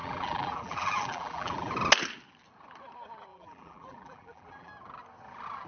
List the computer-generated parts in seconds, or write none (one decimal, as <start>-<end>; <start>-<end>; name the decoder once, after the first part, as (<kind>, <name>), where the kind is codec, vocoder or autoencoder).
0.0-1.7 (vocoder, BigVGAN v2); 3.3-4.7